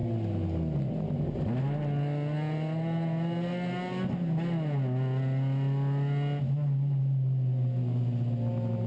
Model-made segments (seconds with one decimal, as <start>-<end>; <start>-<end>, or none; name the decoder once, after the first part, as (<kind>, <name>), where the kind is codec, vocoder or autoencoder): none